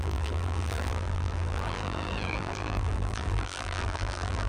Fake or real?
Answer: fake